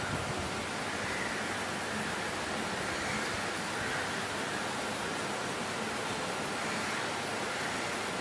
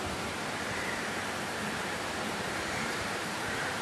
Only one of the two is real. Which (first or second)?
first